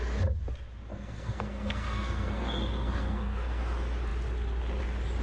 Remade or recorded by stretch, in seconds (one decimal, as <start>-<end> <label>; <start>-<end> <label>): 0.0-0.9 recorded; 0.9-3.6 remade; 3.6-5.2 recorded